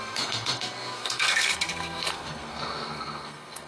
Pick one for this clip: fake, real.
fake